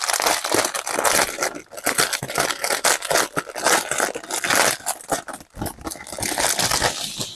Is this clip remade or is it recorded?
recorded